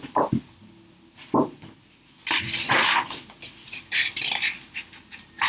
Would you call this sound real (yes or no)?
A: yes